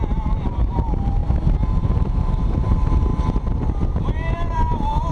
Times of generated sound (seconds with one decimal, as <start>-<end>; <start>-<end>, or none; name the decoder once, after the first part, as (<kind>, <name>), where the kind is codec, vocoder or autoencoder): 0.0-1.2 (vocoder, BigVGAN v2); 2.0-5.1